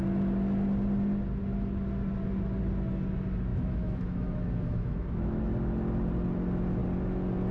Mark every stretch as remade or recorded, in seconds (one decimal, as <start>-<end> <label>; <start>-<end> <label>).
0.0-3.5 recorded; 3.5-5.4 remade; 5.4-7.5 recorded